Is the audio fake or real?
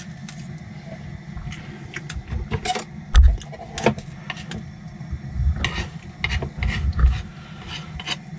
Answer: real